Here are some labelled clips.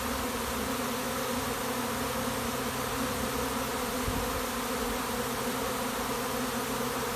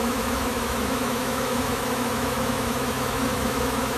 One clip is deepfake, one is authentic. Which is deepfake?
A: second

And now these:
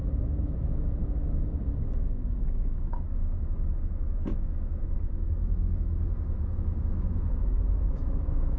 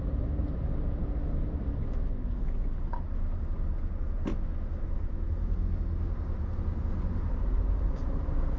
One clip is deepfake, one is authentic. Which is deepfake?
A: first